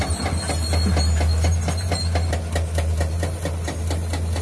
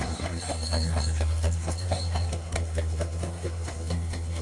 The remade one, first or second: second